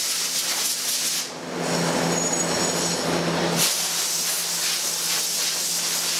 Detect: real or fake real